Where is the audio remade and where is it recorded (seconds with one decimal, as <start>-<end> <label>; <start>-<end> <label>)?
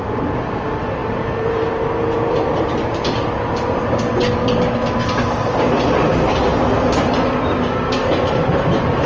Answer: 0.0-1.0 recorded; 1.0-4.0 remade; 4.0-9.1 recorded